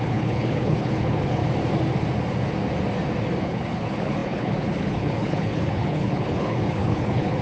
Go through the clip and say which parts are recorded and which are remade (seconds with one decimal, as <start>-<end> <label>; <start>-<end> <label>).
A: 0.0-1.4 remade; 1.4-3.4 recorded; 3.4-7.4 remade